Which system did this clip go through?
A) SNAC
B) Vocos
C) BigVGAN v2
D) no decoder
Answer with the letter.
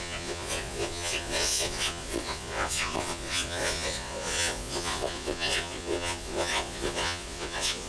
B